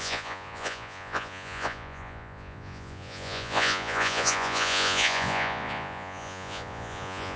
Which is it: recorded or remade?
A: remade